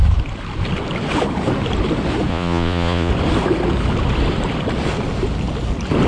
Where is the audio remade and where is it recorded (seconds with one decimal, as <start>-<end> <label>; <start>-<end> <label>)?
0.0-2.3 recorded; 2.3-3.1 remade; 3.1-6.1 recorded